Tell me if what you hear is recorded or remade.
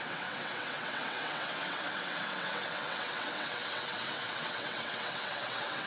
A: remade